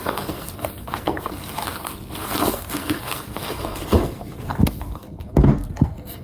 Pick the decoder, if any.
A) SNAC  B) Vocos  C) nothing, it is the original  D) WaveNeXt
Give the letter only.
A